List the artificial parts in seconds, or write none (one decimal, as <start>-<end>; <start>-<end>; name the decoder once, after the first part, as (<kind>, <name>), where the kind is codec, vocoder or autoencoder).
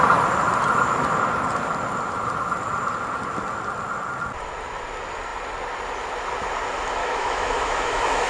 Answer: 7.0-8.3 (autoencoder, DAC-VAE)